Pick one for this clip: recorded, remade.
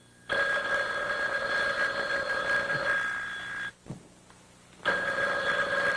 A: recorded